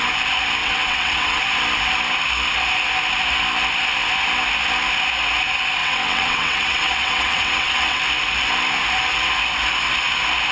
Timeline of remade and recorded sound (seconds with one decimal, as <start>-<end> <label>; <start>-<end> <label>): 0.0-0.6 recorded; 0.6-1.4 remade; 1.4-5.8 recorded; 5.8-8.0 remade; 8.0-10.5 recorded